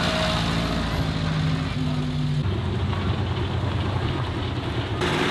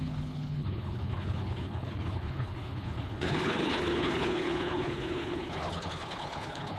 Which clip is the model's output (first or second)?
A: second